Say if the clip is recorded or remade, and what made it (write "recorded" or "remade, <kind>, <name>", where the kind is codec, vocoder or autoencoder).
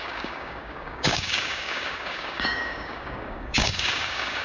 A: remade, codec, DAC